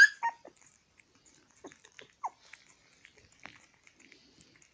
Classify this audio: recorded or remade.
recorded